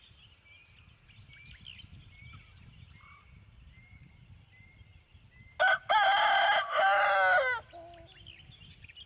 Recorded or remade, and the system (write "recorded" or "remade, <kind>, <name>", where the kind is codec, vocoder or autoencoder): recorded